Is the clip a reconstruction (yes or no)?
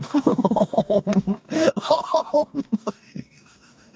yes